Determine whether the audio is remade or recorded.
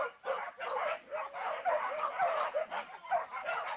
recorded